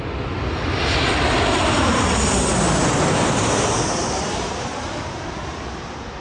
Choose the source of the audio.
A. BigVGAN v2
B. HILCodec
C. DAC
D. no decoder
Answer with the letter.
D